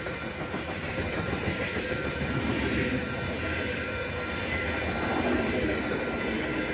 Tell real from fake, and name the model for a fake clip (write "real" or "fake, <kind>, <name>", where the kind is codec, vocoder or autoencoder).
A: real